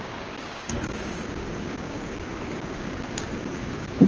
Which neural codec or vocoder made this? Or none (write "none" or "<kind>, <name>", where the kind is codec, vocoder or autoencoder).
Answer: codec, DAC